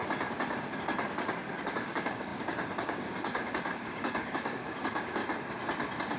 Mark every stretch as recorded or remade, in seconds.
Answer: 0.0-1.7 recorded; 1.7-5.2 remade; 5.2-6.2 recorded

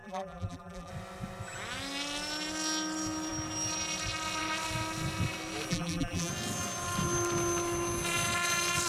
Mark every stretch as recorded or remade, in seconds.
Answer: 0.0-0.9 remade; 0.9-5.7 recorded; 5.7-6.3 remade; 6.3-8.9 recorded

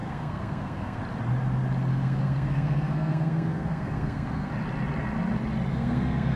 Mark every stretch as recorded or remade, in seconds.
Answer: 0.0-1.0 remade; 1.0-1.9 recorded; 1.9-4.5 remade; 4.5-5.7 recorded; 5.7-6.4 remade

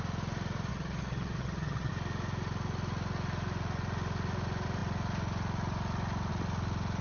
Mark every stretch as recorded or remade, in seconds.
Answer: 0.0-0.7 recorded; 0.7-1.9 remade; 1.9-7.0 recorded

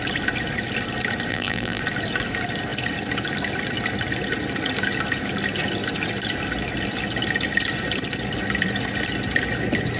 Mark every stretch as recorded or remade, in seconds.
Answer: 0.0-1.3 recorded; 1.3-1.8 remade; 1.8-10.0 recorded

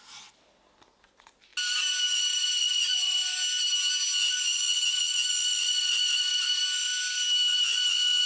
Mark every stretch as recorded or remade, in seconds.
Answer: 0.0-8.3 recorded

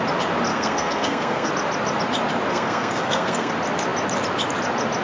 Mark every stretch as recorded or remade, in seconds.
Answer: 0.0-0.5 recorded; 0.5-1.5 remade; 1.5-2.5 recorded; 2.5-3.5 remade; 3.5-5.0 recorded